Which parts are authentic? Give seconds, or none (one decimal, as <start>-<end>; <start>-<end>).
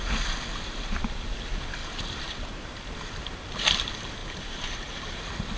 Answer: 0.0-1.8; 2.7-4.2; 5.0-5.6